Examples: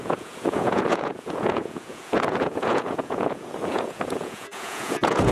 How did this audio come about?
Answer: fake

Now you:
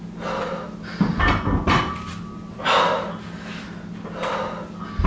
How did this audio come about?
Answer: real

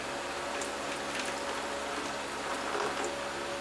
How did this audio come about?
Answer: real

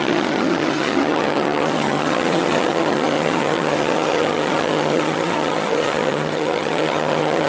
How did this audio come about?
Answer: fake